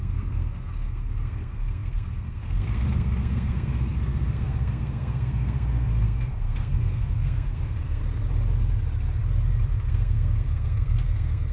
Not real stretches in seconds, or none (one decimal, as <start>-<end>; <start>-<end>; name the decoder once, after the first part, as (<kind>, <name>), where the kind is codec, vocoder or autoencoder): 0.0-8.0 (codec, SNAC); 9.9-11.5